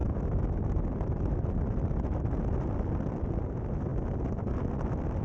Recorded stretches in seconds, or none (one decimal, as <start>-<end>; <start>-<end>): 0.6-5.2